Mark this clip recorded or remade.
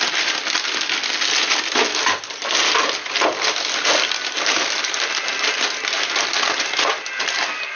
recorded